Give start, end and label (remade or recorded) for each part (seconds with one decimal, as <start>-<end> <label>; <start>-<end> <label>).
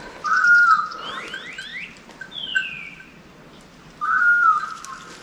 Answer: 0.0-5.2 recorded